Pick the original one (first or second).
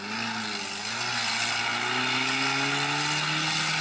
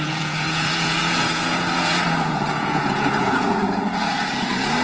first